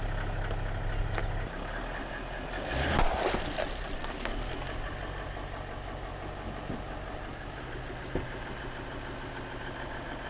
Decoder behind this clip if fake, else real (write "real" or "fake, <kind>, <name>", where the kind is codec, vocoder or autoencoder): real